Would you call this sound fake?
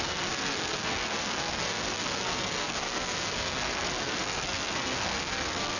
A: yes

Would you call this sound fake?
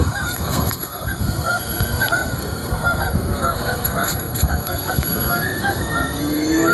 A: yes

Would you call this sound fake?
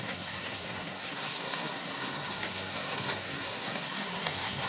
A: yes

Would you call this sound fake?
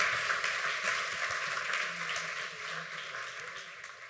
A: no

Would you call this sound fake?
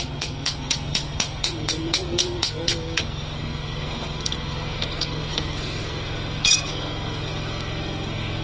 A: yes